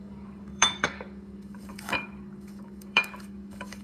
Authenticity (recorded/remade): remade